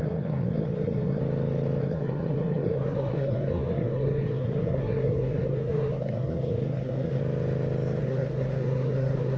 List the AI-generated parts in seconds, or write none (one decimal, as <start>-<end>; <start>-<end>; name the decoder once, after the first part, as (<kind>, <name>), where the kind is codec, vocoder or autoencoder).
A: 0.0-1.2 (codec, SNAC); 1.8-7.2; 8.0-9.4